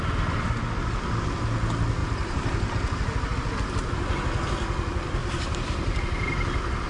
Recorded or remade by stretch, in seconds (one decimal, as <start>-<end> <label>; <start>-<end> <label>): 0.0-2.0 recorded; 2.0-2.7 remade; 2.7-5.2 recorded; 5.2-6.0 remade; 6.0-6.9 recorded